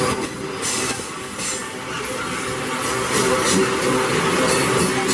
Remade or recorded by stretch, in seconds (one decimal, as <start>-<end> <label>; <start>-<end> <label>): 0.0-5.1 recorded